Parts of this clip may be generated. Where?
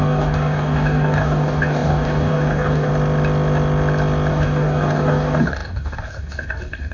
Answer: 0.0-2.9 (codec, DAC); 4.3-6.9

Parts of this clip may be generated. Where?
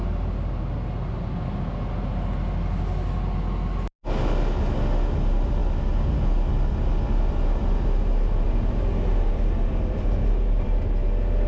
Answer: none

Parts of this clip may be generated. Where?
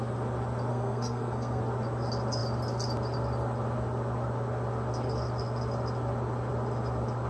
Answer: 0.7-1.6 (codec, SNAC)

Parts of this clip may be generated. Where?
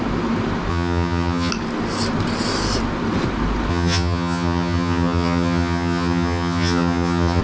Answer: 0.7-1.5 (vocoder, HiFi-GAN); 3.7-7.4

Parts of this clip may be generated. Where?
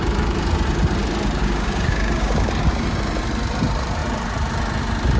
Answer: 1.4-2.5 (codec, DAC)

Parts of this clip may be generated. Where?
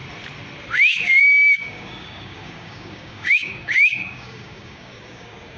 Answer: 1.2-5.6 (codec, DAC)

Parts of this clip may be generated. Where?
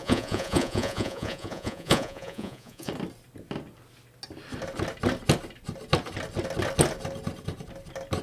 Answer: 0.0-2.9 (vocoder, Vocos)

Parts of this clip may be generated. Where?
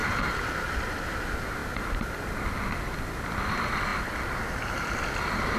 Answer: none